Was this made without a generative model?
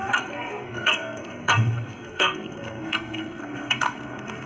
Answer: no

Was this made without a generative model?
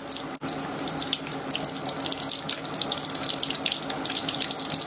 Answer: yes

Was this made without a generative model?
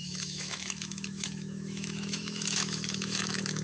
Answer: no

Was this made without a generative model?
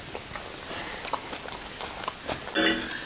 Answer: yes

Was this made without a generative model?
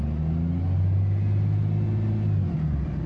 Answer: yes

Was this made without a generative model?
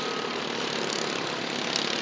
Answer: yes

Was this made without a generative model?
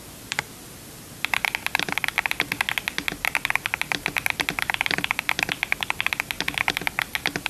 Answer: yes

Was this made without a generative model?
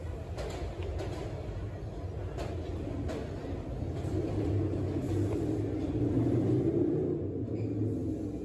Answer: yes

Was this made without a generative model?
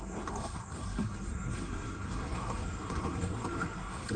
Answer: no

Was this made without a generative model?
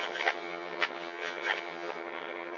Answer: no